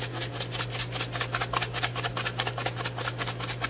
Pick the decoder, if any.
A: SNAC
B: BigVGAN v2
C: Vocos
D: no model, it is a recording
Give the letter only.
D